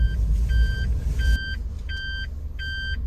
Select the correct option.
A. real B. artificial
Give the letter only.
A